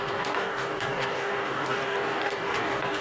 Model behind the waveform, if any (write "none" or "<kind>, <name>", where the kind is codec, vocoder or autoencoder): codec, DAC